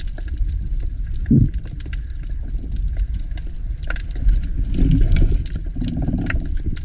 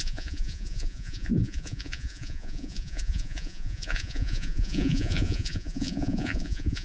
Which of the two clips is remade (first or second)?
second